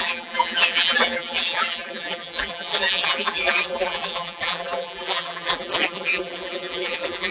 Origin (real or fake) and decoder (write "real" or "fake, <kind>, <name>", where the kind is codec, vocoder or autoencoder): fake, vocoder, BigVGAN v2